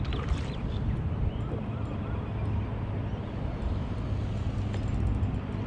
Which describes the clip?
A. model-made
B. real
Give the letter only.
B